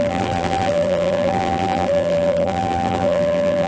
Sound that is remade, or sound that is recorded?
remade